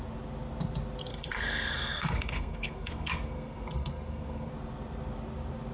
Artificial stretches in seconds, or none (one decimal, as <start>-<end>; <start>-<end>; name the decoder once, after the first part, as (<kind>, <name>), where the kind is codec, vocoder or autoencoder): 1.1-4.5 (codec, SNAC)